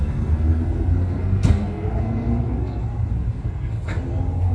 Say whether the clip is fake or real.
fake